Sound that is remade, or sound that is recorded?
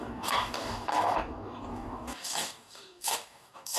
remade